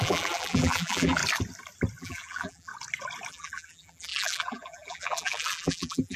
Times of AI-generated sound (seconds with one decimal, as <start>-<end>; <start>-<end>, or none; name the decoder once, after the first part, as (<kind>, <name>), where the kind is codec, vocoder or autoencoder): 0.0-1.2 (vocoder, BigVGAN v2); 2.0-2.7; 3.3-6.2